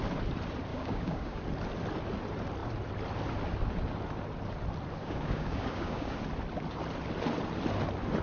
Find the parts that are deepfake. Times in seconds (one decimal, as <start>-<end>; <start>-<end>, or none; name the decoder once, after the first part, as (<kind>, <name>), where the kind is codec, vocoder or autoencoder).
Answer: 0.7-1.4 (codec, DAC); 5.0-6.2